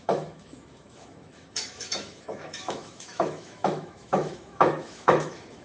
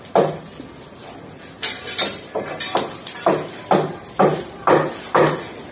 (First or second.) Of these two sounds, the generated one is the first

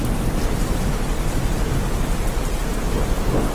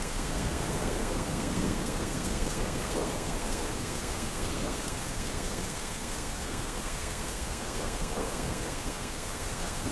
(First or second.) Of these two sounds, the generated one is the second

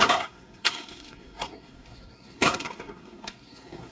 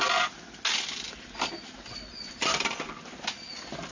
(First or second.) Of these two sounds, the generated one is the first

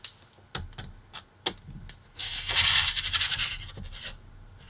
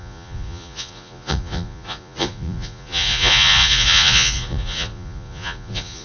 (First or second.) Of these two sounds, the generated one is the second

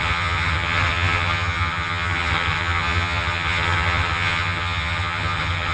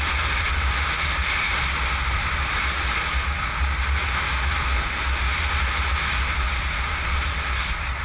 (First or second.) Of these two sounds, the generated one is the first